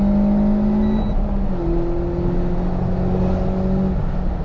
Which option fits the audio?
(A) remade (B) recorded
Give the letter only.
B